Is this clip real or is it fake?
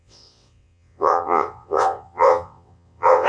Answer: fake